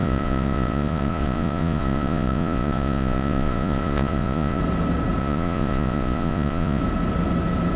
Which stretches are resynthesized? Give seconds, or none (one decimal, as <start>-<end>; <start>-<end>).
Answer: 0.0-4.6; 5.2-6.8

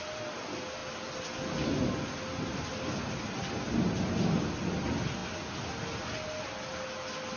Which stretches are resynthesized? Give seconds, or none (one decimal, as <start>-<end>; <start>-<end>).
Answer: none

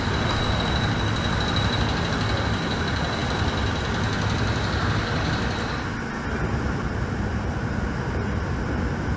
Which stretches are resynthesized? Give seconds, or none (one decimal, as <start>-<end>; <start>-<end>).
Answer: none

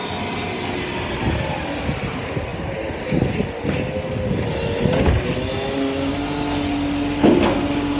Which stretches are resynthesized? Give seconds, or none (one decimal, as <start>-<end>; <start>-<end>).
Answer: none

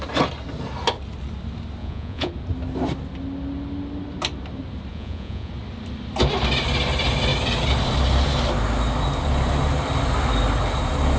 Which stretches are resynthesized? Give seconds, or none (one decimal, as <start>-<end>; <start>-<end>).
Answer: 1.8-2.3; 4.9-5.5

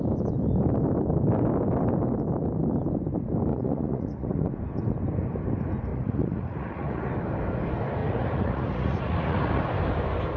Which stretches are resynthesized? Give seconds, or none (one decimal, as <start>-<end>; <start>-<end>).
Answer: 3.5-4.5; 5.9-7.1; 8.0-9.6